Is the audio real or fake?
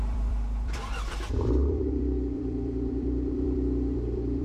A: fake